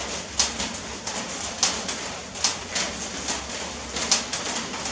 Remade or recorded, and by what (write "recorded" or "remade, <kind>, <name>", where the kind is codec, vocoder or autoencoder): recorded